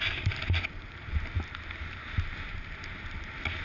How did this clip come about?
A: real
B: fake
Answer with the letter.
A